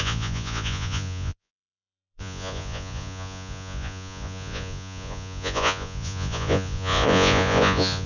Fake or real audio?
fake